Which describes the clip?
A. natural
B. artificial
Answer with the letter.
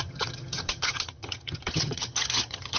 B